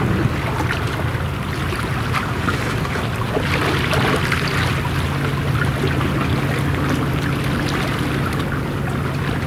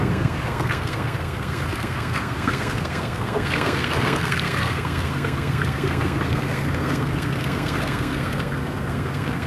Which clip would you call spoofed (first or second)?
second